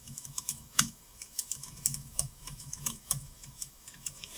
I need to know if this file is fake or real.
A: fake